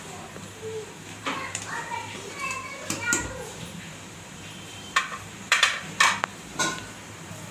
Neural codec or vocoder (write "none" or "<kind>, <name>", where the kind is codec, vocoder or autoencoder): vocoder, BigVGAN v2